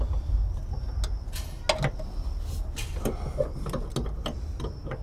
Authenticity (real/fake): real